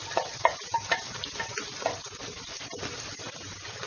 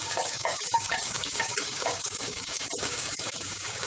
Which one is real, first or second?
first